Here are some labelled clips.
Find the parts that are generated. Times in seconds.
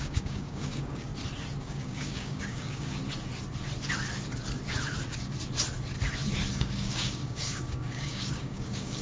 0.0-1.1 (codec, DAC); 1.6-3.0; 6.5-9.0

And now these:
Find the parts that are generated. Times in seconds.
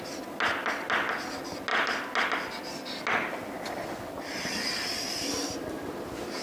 none